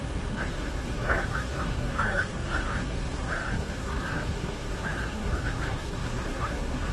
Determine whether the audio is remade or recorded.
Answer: remade